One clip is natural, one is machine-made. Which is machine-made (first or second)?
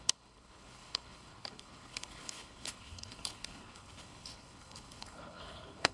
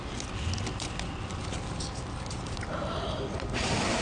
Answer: first